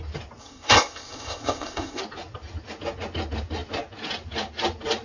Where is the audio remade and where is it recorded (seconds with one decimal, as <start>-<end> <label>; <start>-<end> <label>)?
0.0-0.4 recorded; 0.4-2.0 remade; 2.0-5.0 recorded